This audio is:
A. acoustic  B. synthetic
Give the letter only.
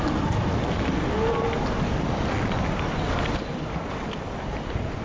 A